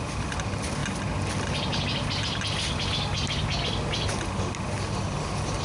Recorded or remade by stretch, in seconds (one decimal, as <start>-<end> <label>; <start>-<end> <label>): 0.0-5.6 recorded

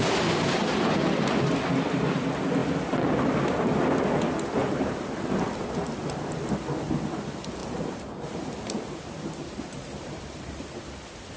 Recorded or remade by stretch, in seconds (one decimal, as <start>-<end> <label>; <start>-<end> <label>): 0.0-4.6 recorded; 4.6-5.3 remade; 5.3-7.6 recorded; 7.6-10.9 remade; 10.9-11.4 recorded